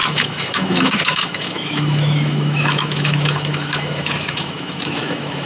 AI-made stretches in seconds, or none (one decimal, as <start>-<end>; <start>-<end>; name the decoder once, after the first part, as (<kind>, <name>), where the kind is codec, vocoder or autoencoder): 0.0-5.5 (autoencoder, DAC-VAE)